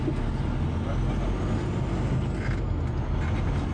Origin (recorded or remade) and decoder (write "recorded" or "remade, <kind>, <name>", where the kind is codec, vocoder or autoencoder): recorded